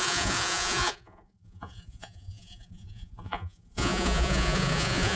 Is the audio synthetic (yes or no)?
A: yes